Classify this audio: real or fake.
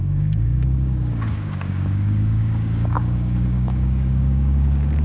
fake